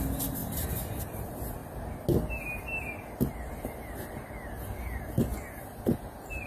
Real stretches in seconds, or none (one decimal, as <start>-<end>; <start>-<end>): 0.0-6.5